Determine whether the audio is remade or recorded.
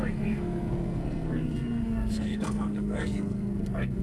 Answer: remade